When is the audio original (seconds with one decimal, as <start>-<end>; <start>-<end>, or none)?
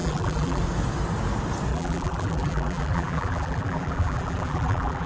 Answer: 0.6-1.7